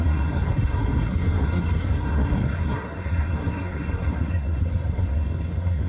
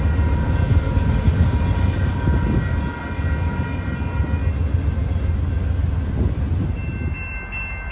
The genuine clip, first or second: second